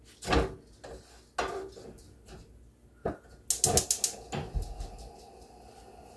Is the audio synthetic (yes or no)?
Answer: no